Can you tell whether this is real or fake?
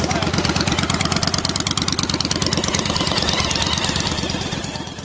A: real